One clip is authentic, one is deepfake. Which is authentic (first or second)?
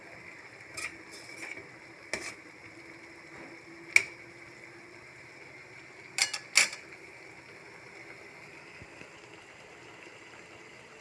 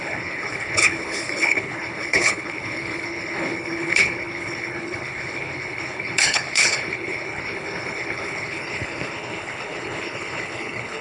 first